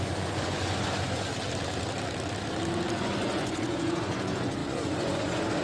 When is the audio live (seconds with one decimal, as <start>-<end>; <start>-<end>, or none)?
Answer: 1.3-2.9

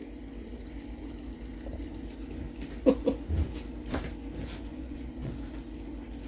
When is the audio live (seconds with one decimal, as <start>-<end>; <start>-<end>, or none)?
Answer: 0.0-4.7; 5.3-6.3

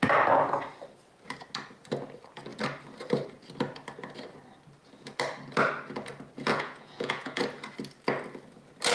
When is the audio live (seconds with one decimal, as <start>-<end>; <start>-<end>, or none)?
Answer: 0.0-6.5; 7.4-8.9

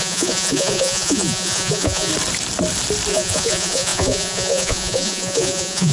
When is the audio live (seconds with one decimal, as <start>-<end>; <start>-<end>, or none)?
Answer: 2.1-3.1

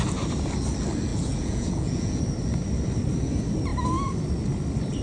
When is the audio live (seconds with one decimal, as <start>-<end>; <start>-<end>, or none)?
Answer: 0.0-1.1; 2.2-5.0

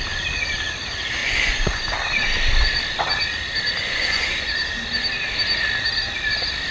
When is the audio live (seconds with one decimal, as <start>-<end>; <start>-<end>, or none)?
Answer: 0.0-1.2; 1.8-3.8; 4.5-6.7

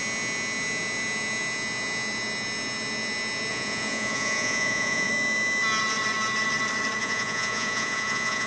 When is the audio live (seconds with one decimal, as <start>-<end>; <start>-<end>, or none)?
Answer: 0.0-3.5; 5.1-7.0

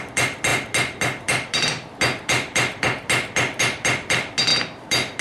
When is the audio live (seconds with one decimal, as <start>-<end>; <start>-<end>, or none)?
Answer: 0.0-5.2